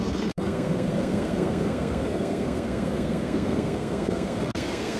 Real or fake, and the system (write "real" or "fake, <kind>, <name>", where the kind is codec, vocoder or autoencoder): fake, codec, SNAC